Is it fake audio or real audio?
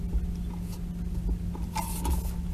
real